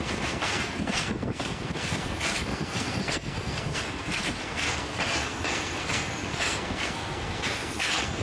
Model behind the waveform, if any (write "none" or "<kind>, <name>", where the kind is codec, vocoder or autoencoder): codec, SNAC